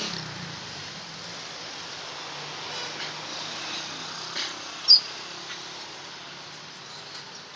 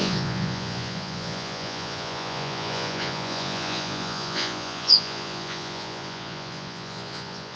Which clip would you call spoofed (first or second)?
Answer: second